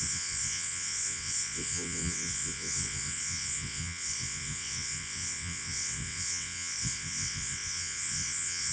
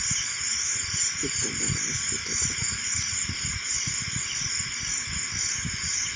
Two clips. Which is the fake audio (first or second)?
first